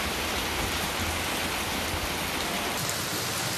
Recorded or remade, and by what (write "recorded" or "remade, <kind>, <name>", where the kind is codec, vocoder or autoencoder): recorded